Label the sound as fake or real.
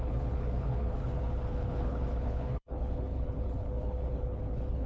fake